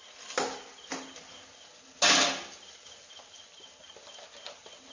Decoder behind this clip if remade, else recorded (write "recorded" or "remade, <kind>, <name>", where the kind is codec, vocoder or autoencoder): recorded